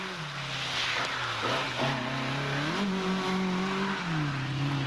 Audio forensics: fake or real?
real